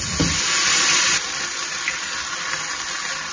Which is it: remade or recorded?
recorded